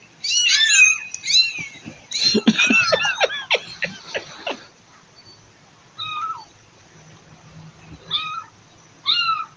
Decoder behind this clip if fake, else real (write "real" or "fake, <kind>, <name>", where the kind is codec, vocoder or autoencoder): real